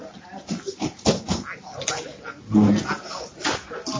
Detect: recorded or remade recorded